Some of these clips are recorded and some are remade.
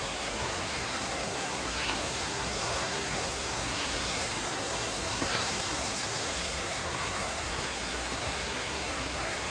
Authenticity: remade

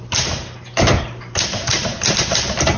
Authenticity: remade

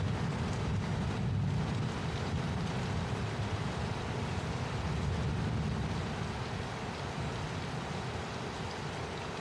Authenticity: recorded